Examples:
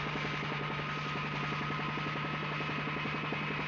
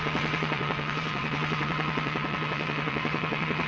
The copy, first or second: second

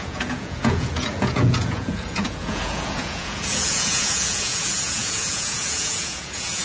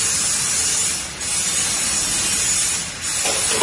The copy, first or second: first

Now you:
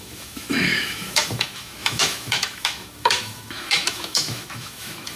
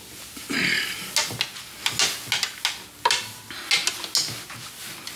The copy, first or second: first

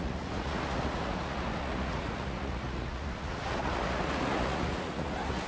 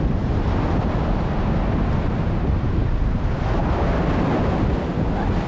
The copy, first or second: first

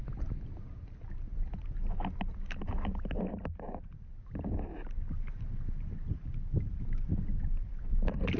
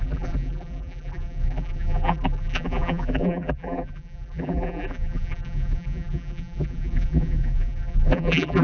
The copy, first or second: second